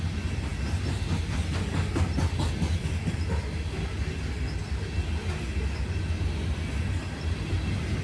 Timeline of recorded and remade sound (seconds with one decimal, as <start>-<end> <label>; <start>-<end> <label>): 0.0-8.0 recorded